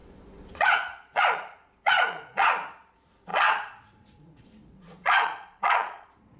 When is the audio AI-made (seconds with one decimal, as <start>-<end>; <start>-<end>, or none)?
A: 0.0-6.4